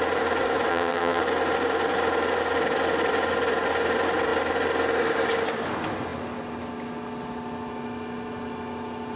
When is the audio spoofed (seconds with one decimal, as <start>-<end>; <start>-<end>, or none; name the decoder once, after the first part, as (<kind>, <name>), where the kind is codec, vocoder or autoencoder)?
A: 0.7-1.2 (vocoder, HiFi-GAN)